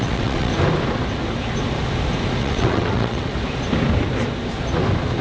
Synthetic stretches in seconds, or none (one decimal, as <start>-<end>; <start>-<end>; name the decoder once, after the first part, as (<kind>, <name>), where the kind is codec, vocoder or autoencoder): 0.0-0.5 (vocoder, WaveNeXt); 2.4-3.3